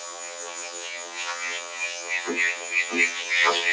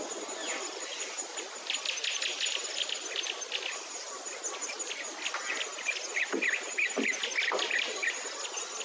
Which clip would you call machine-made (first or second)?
first